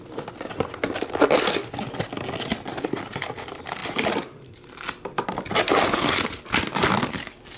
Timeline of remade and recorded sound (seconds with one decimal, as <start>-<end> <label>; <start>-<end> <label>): 0.0-3.8 recorded; 3.8-4.5 remade; 4.5-7.6 recorded